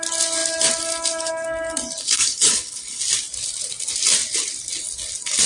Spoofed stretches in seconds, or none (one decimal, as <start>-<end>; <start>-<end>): 2.0-3.0